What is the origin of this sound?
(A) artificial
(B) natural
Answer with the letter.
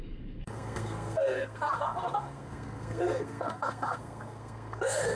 A